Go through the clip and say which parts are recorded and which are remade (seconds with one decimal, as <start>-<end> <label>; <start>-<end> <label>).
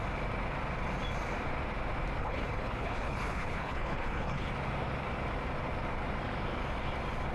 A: 0.0-2.2 recorded; 2.2-4.5 remade; 4.5-7.3 recorded